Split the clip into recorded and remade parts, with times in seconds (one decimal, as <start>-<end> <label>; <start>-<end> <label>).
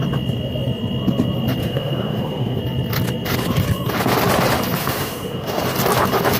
0.0-1.6 recorded; 1.6-2.6 remade; 2.6-4.8 recorded; 4.8-5.6 remade; 5.6-6.4 recorded